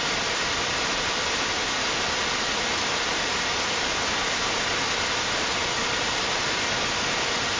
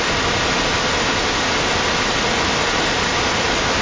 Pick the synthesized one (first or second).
first